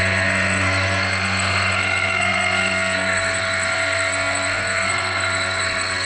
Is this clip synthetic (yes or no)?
yes